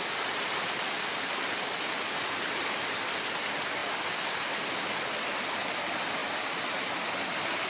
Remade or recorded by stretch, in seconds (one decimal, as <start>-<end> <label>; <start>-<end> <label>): 0.0-7.7 recorded